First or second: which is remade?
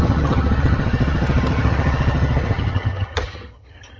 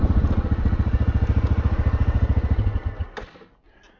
first